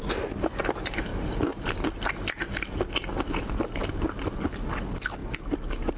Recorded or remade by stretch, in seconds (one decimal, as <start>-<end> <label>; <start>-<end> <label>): 0.0-6.0 recorded